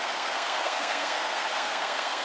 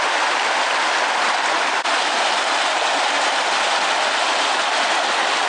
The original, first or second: second